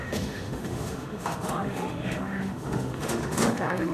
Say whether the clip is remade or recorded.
remade